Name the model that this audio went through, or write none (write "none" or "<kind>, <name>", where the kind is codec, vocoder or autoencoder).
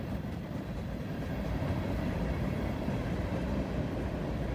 vocoder, BigVGAN v2